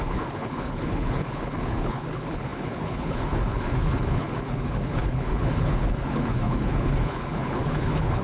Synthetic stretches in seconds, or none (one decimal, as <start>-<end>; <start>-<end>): 0.0-8.2